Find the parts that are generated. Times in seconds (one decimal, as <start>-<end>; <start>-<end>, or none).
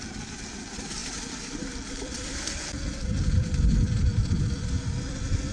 none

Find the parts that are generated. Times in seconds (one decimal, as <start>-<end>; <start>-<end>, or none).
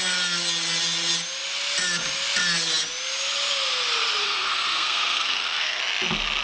4.2-5.8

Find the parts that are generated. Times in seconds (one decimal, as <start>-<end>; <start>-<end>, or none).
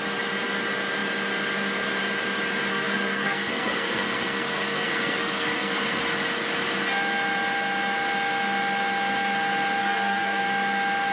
2.7-6.0; 9.8-10.4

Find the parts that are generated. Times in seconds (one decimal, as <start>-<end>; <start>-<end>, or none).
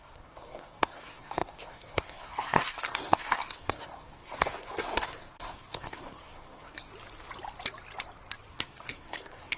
0.0-6.9; 8.5-9.6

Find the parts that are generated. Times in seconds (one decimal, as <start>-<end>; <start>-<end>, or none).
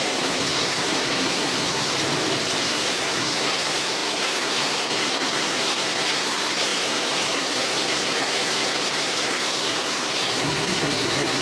0.0-1.9; 2.6-11.4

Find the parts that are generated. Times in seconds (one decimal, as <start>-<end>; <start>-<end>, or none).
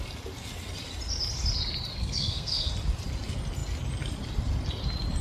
1.9-2.7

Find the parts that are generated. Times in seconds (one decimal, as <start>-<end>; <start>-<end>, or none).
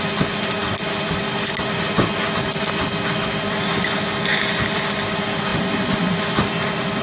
none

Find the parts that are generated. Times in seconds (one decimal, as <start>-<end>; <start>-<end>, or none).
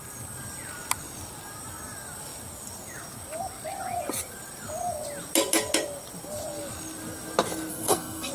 7.7-8.3